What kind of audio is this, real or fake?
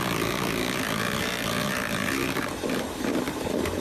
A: real